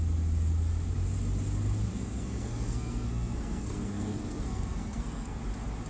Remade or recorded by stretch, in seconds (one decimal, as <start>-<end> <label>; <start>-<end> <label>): 0.0-1.9 recorded; 1.9-5.4 remade; 5.4-5.9 recorded

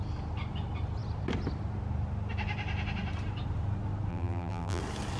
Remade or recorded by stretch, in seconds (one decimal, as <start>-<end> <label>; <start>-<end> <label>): 0.0-4.1 recorded; 4.1-4.8 remade; 4.8-5.2 recorded

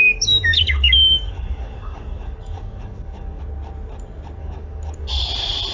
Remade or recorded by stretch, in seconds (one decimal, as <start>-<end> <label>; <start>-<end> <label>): 0.0-3.4 remade; 3.4-4.4 recorded; 4.4-5.3 remade; 5.3-5.7 recorded